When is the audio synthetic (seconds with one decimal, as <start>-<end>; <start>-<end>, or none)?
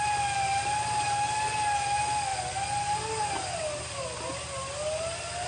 none